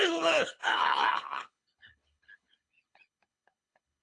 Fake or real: fake